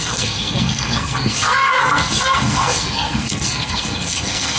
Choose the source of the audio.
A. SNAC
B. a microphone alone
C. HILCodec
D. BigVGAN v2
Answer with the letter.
A